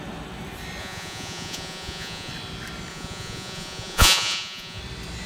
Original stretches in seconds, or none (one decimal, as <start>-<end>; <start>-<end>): 0.0-0.8; 2.3-2.9; 4.8-5.3